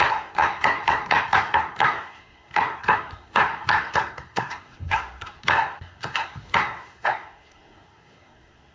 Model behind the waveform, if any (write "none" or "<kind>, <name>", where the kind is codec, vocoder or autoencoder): codec, SNAC